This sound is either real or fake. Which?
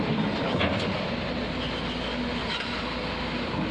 real